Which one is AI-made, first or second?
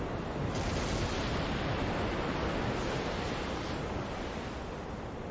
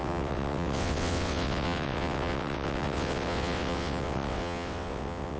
second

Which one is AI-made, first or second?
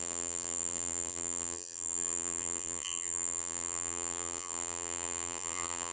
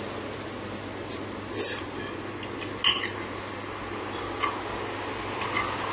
first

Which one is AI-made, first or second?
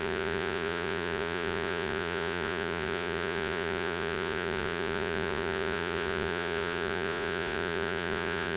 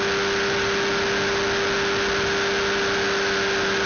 first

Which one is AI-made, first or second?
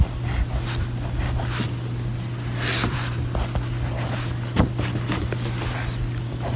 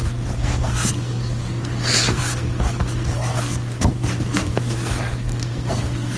second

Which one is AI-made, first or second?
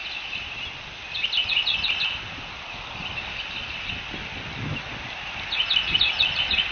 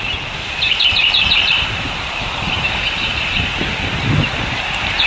second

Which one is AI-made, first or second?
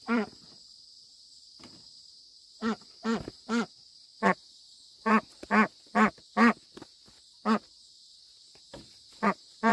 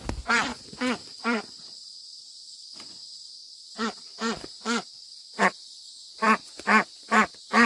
second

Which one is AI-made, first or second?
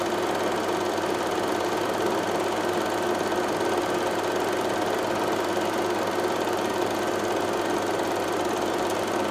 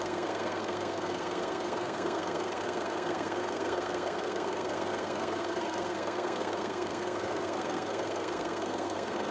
second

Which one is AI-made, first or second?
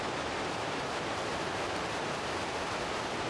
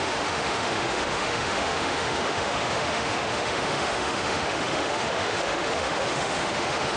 second